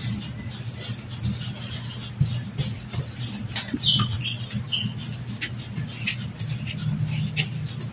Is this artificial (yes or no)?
no